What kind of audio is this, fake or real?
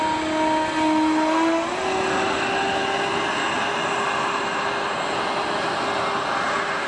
real